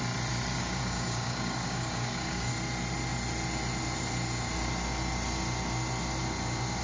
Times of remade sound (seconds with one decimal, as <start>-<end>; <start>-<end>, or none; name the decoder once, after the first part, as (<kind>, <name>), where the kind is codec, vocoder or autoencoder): 0.6-2.5 (codec, DAC)